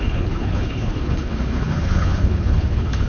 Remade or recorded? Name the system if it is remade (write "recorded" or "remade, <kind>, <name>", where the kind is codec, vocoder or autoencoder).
remade, codec, HILCodec